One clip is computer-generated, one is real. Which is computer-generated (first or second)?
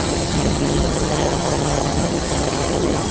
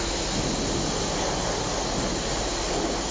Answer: first